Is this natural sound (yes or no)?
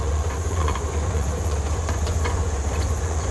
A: no